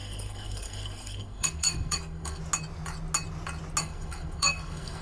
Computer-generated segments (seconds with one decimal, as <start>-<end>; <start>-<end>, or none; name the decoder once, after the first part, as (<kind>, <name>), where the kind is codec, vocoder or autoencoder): 0.0-2.4 (codec, SNAC); 3.8-5.0